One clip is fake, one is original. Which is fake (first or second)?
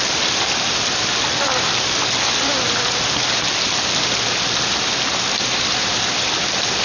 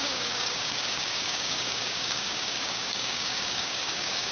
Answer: second